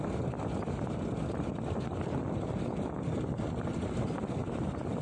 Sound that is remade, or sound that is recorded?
recorded